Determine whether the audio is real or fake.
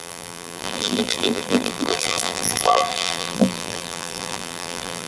fake